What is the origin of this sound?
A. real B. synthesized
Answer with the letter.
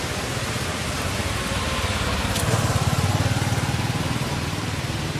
A